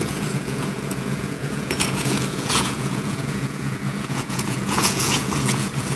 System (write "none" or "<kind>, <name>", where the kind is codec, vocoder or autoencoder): vocoder, Vocos